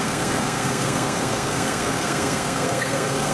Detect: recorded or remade remade